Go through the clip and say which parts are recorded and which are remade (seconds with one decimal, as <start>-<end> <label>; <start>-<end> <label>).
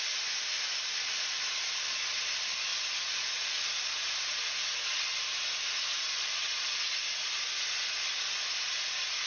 0.0-9.3 recorded